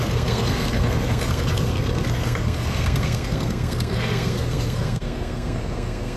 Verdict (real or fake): fake